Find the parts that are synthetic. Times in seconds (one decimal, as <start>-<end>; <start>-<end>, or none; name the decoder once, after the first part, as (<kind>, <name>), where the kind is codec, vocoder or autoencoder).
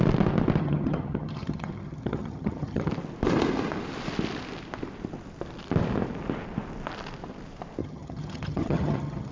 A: 0.6-2.9 (vocoder, HiFi-GAN); 7.8-9.3